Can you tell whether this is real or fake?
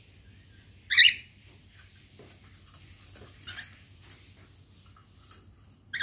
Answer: real